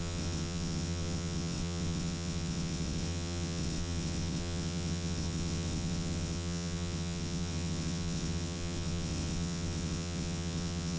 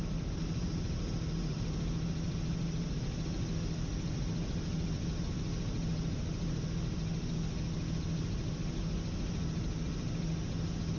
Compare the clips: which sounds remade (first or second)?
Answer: first